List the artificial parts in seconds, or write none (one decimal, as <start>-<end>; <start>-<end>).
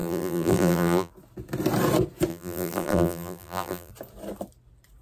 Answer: 0.0-1.1; 2.3-3.9